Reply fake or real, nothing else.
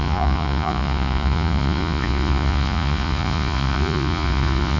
fake